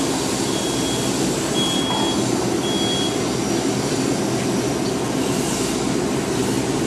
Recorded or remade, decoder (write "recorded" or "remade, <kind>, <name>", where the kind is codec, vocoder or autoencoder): recorded